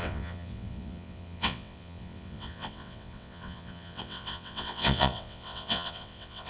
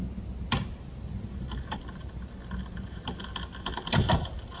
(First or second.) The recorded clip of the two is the second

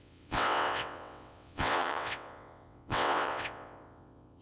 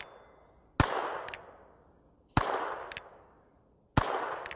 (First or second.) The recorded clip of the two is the second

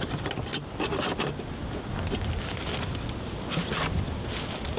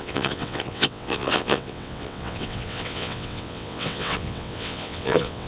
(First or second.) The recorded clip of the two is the first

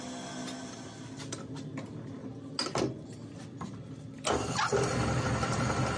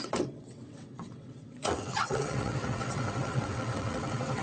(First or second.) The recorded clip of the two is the first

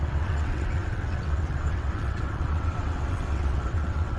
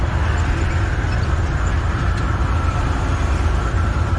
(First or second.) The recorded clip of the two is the second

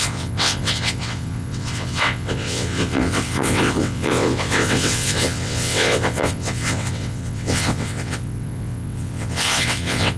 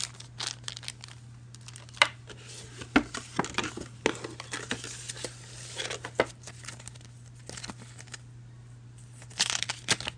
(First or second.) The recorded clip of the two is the second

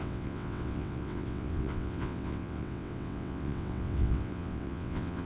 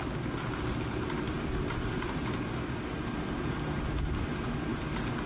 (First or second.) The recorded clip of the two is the second